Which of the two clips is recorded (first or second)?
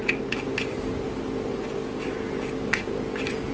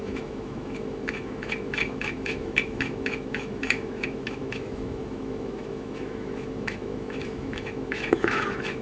first